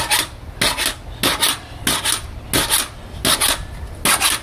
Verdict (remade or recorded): recorded